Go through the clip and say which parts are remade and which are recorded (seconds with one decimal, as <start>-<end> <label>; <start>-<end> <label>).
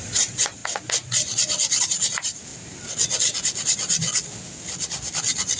0.0-0.6 remade; 0.6-1.8 recorded; 1.8-2.5 remade; 2.5-5.6 recorded